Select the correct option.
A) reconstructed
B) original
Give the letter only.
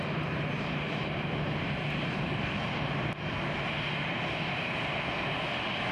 B